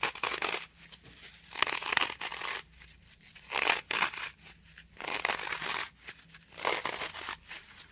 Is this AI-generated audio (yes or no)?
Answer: no